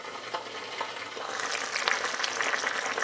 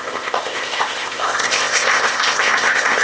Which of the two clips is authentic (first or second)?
first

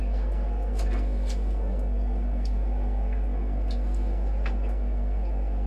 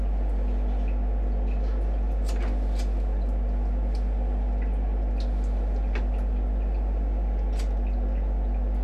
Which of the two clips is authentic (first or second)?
second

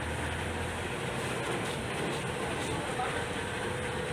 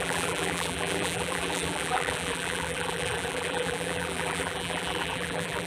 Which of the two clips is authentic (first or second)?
first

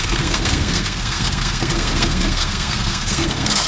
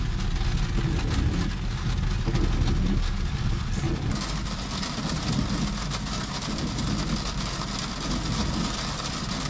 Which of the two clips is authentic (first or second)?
second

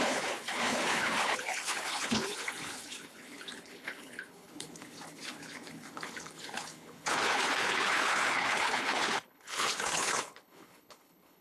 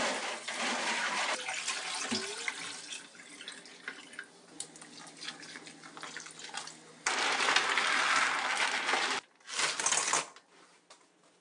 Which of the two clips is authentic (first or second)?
second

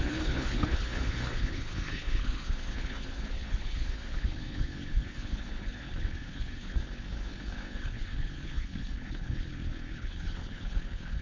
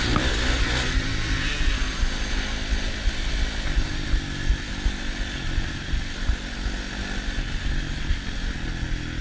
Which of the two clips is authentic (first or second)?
second